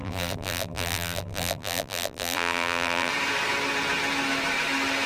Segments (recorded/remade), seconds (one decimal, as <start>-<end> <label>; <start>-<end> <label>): 0.0-3.1 remade; 3.1-5.1 recorded